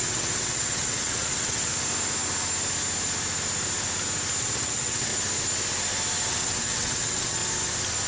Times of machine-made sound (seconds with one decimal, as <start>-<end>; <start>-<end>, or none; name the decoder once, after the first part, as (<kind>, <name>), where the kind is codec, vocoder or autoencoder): 0.0-1.7 (vocoder, WaveNeXt); 4.4-5.1; 6.3-7.4